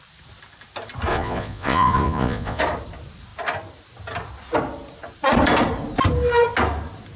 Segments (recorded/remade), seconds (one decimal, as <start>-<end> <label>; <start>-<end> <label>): 0.0-1.1 recorded; 1.1-2.6 remade; 2.6-7.2 recorded